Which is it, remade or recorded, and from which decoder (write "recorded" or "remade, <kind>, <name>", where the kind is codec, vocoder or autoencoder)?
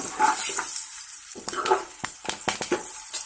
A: recorded